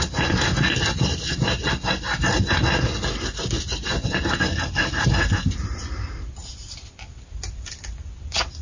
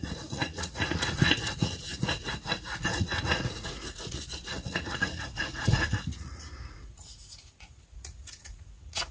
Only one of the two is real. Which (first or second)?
first